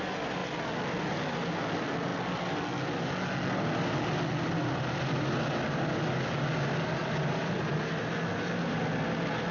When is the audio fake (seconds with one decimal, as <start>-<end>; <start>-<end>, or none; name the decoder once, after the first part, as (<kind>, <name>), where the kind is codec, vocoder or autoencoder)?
7.0-7.6 (vocoder, BigVGAN v2)